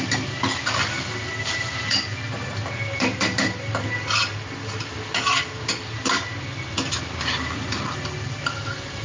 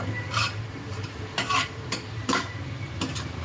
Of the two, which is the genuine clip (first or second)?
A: first